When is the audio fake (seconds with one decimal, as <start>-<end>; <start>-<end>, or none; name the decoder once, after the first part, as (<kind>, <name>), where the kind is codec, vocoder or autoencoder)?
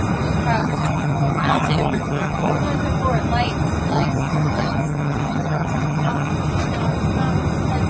0.6-2.6 (vocoder, HiFi-GAN); 3.9-6.3